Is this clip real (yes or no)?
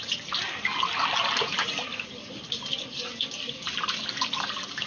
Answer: yes